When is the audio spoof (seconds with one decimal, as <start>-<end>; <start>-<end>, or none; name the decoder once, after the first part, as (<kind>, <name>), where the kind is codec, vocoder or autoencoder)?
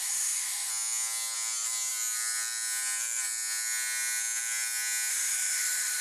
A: 0.0-0.7 (autoencoder, DAC-VAE); 5.1-6.0